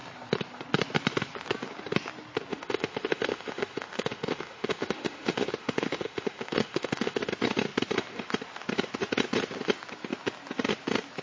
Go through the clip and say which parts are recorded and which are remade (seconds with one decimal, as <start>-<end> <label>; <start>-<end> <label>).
0.0-2.5 recorded; 2.5-7.3 remade; 7.3-11.2 recorded

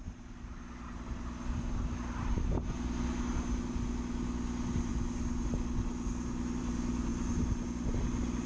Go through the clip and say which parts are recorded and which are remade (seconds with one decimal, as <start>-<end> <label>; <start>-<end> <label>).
0.0-8.5 recorded

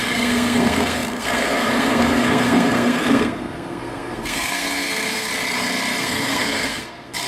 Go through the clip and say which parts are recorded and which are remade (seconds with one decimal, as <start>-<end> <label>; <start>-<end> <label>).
0.0-5.3 remade; 5.3-6.0 recorded; 6.0-7.3 remade

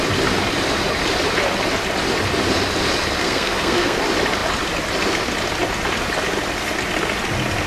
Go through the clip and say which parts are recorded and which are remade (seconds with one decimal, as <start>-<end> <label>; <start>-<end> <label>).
0.0-3.2 recorded; 3.2-4.0 remade; 4.0-7.7 recorded

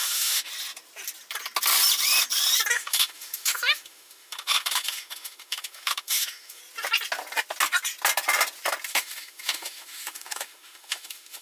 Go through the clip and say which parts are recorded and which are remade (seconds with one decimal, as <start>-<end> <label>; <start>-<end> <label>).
0.0-0.5 remade; 0.5-2.7 recorded; 2.7-6.6 remade; 6.6-8.9 recorded; 8.9-11.4 remade

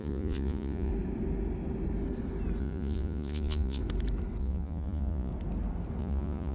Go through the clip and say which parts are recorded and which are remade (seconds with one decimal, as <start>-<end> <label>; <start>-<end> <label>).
0.0-0.9 remade; 0.9-2.6 recorded; 2.6-3.8 remade; 3.8-4.4 recorded; 4.4-5.3 remade; 5.3-6.0 recorded; 6.0-6.5 remade

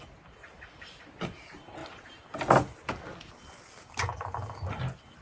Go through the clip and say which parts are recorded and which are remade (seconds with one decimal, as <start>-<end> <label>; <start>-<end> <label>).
0.0-5.2 recorded

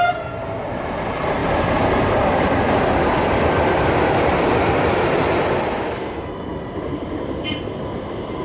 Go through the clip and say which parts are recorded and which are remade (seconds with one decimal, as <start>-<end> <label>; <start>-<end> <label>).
0.0-1.4 recorded; 1.4-6.4 remade; 6.4-8.4 recorded